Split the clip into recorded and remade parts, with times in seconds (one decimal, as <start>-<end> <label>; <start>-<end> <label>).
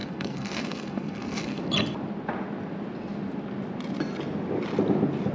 0.0-1.6 remade; 1.6-5.3 recorded